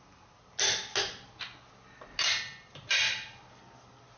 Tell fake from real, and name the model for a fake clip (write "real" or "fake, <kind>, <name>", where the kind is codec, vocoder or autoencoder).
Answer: real